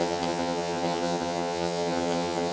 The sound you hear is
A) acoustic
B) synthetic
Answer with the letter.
B